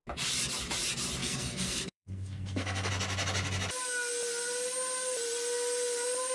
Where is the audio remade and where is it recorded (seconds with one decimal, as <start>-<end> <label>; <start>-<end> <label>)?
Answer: 0.0-1.2 recorded; 1.2-2.9 remade; 2.9-6.3 recorded